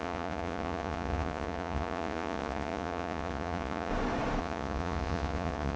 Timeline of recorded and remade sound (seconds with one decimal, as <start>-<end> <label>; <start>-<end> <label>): 0.0-3.9 remade; 3.9-4.4 recorded; 4.4-5.8 remade